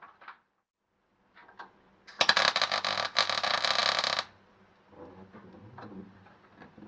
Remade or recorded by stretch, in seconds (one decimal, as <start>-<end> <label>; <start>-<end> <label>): 0.0-6.9 recorded